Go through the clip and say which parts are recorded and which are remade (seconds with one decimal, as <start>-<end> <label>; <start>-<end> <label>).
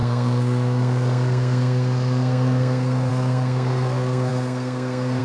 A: 0.0-5.2 remade